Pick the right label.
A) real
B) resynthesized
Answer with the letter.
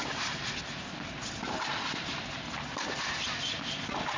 A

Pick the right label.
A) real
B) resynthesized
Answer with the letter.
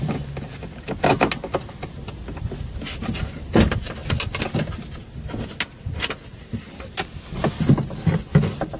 A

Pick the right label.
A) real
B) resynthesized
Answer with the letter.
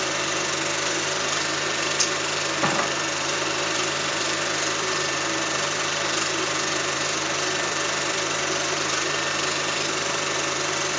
B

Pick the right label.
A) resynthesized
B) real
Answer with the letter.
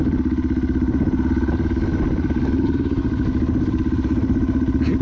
B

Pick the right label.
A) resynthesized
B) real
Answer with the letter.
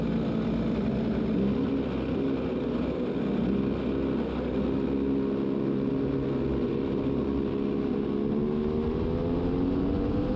B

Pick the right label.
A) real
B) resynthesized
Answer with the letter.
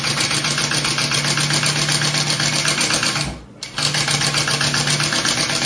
A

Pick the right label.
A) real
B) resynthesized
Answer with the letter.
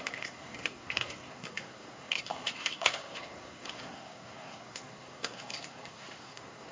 B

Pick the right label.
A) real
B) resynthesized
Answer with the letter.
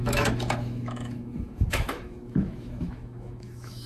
B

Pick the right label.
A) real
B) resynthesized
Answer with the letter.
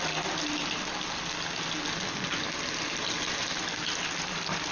A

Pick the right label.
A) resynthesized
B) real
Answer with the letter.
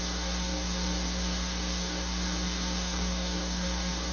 A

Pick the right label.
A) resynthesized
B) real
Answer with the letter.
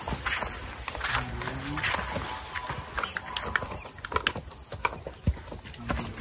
B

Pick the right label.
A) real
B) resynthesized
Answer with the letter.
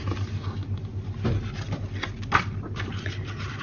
A